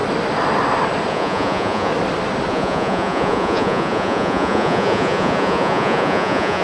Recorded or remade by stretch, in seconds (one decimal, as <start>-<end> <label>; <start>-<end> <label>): 0.0-1.1 recorded; 1.1-1.9 remade; 1.9-2.5 recorded; 2.5-6.6 remade